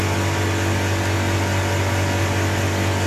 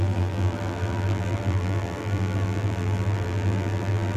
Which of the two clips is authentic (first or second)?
first